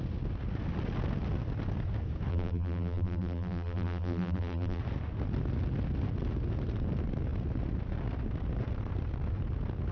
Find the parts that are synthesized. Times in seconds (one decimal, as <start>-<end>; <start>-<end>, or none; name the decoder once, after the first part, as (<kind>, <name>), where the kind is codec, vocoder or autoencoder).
2.3-4.8 (vocoder, BigVGAN v2)